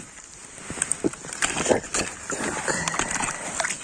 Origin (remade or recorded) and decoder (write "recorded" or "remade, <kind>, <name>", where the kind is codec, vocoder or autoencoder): recorded